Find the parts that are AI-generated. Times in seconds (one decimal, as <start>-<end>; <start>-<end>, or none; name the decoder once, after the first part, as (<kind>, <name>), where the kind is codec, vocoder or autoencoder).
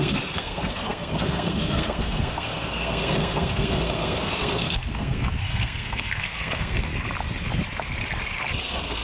0.0-6.9 (codec, SNAC); 8.6-9.0